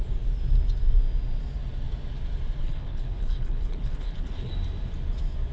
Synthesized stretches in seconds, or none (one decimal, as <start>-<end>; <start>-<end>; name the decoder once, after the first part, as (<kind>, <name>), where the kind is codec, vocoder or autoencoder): 2.6-4.5 (codec, HILCodec)